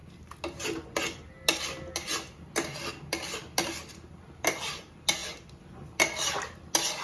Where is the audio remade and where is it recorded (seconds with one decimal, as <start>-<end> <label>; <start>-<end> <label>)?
0.0-7.0 recorded